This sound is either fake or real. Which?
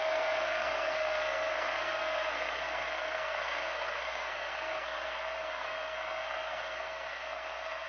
fake